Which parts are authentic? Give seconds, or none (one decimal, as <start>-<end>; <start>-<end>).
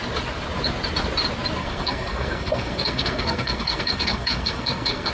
0.0-1.6